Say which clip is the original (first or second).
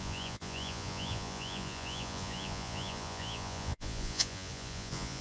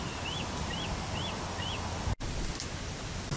second